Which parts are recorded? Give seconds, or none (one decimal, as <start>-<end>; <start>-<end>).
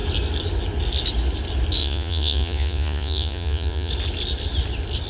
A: 0.0-1.8; 3.9-5.1